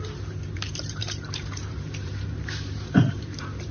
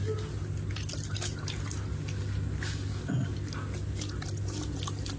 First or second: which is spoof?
first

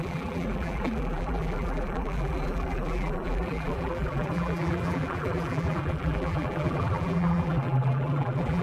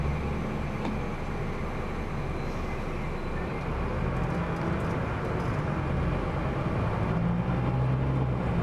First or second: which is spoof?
first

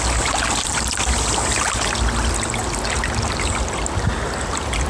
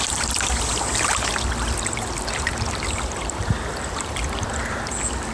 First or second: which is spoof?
second